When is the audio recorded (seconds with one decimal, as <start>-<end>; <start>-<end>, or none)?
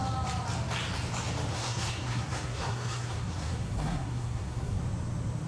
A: 0.0-1.5; 4.8-5.5